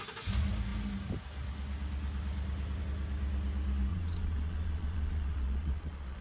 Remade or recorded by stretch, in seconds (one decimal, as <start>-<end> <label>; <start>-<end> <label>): 0.0-3.9 recorded; 3.9-6.2 remade